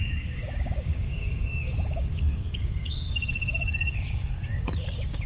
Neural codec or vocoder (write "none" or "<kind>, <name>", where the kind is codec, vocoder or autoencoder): codec, DAC